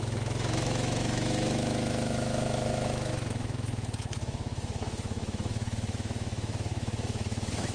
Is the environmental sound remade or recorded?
remade